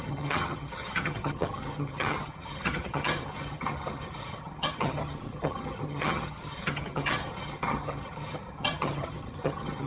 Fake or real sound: fake